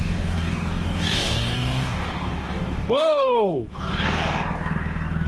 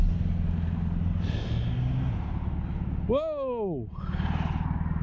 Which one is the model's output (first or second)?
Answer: first